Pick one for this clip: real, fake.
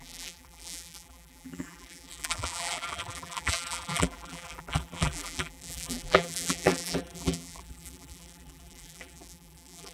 fake